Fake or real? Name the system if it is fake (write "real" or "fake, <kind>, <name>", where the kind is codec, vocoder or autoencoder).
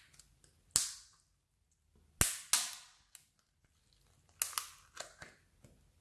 real